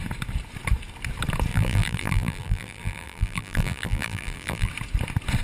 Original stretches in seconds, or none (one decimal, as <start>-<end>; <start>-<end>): 0.0-1.5; 4.7-5.4